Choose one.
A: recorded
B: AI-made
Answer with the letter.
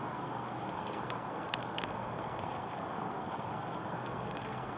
B